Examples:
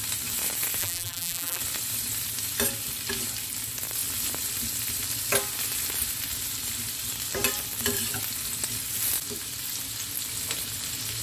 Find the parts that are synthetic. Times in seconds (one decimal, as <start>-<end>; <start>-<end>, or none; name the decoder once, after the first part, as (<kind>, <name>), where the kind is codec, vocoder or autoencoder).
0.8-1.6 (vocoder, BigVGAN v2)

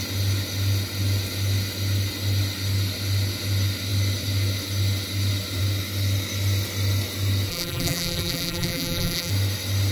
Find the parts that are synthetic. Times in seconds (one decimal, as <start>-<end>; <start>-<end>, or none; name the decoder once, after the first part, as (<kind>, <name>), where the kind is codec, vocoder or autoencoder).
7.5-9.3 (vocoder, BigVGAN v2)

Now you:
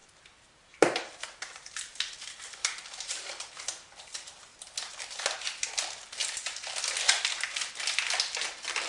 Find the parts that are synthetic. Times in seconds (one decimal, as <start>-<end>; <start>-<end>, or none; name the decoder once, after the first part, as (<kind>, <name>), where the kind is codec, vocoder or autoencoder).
0.0-4.4 (vocoder, BigVGAN v2); 6.2-6.7

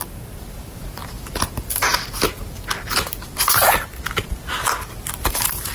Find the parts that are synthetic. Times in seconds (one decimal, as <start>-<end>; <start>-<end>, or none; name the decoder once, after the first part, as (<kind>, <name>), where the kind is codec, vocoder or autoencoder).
0.0-1.0 (vocoder, BigVGAN v2); 1.5-1.9; 5.3-5.7

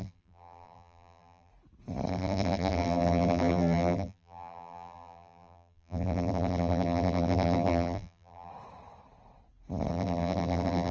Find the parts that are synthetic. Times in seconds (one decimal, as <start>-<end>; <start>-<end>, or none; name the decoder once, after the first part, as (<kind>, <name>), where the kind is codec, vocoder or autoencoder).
0.0-1.5 (vocoder, BigVGAN v2); 2.1-8.5; 9.9-10.9

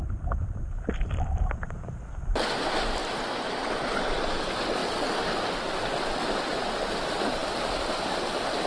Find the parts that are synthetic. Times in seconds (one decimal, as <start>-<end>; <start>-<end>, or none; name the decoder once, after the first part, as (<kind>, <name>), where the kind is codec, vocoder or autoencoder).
0.0-3.0 (vocoder, BigVGAN v2); 3.5-4.8; 5.6-8.7

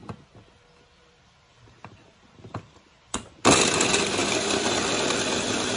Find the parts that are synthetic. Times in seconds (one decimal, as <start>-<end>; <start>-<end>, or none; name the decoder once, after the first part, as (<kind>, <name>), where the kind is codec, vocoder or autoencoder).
1.5-3.5 (vocoder, BigVGAN v2)

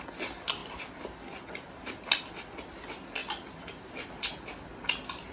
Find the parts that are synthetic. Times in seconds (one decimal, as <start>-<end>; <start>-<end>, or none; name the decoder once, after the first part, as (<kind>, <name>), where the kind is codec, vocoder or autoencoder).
0.6-2.3 (vocoder, BigVGAN v2)